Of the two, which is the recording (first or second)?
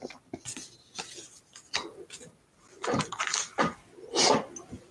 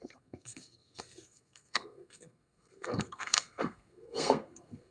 first